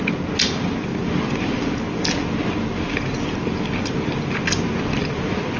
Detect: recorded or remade recorded